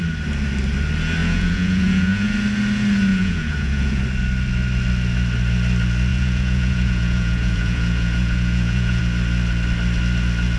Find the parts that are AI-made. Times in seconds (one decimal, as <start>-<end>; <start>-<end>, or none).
1.2-2.3; 3.1-4.0; 6.1-9.0